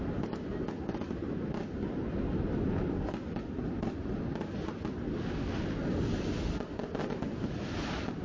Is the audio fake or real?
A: real